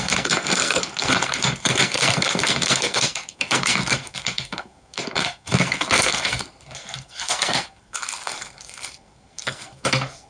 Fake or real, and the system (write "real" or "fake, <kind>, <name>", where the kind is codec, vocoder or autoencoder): fake, codec, SNAC